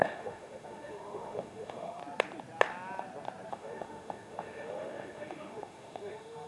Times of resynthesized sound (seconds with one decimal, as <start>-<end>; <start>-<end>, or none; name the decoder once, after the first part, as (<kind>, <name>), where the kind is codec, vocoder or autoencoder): 0.0-2.0 (autoencoder, DAC-VAE); 3.5-6.5